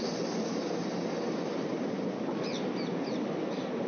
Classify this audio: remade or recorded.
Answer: recorded